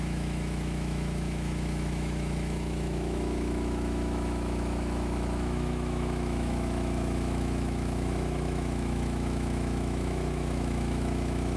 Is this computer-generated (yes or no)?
yes